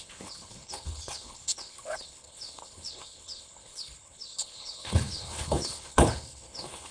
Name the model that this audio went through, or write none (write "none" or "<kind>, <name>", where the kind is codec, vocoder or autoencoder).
codec, HILCodec